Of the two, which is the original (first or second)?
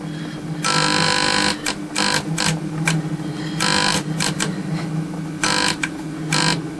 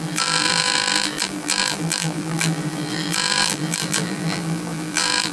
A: first